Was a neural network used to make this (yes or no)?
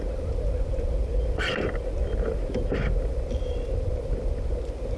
no